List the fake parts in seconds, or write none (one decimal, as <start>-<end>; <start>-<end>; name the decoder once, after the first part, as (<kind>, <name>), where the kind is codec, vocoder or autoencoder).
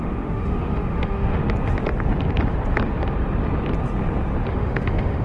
0.0-1.4 (autoencoder, DAC-VAE); 4.5-5.2